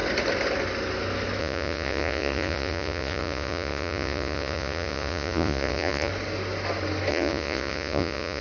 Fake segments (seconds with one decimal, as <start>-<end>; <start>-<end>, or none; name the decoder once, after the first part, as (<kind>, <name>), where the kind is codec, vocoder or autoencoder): 1.4-6.1 (vocoder, Vocos); 7.1-8.4